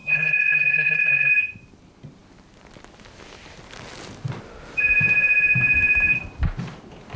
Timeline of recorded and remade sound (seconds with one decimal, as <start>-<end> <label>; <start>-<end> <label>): 0.0-1.3 remade; 1.3-7.2 recorded